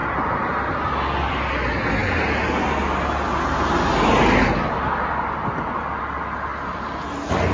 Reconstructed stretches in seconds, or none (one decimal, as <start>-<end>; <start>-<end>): none